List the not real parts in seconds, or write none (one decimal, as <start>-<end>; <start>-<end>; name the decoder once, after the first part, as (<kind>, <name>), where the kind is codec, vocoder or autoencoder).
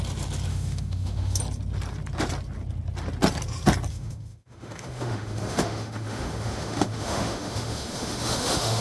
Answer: 0.5-1.4 (autoencoder, DAC-VAE); 3.9-8.8